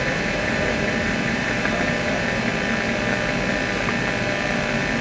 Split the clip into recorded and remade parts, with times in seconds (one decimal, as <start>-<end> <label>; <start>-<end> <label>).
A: 0.0-2.5 remade; 2.5-5.0 recorded